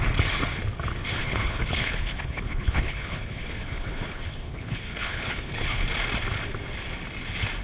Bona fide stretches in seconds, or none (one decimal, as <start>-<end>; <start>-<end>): 0.0-1.2; 5.8-7.6